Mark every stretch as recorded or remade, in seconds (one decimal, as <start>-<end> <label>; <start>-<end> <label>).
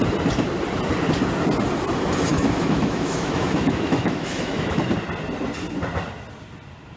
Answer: 0.0-2.3 recorded; 2.3-4.8 remade; 4.8-7.0 recorded